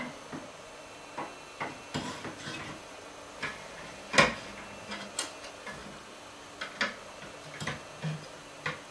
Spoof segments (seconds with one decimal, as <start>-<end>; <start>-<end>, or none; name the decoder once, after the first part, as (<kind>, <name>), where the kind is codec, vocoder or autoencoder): 0.4-0.9 (vocoder, Vocos)